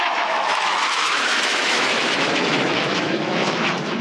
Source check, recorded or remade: remade